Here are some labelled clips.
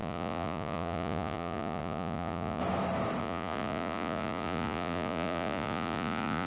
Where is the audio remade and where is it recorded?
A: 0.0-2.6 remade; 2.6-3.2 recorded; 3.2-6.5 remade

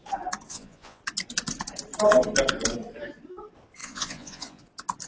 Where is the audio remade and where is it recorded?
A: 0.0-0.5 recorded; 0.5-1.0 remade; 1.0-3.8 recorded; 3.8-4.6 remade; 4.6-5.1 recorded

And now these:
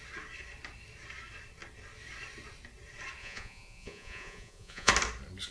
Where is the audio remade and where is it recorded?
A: 0.0-3.2 recorded; 3.2-4.9 remade; 4.9-5.5 recorded

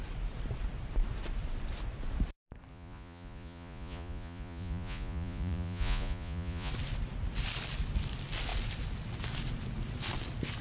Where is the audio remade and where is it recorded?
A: 0.0-2.7 recorded; 2.7-6.7 remade; 6.7-10.6 recorded